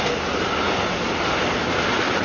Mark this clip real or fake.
real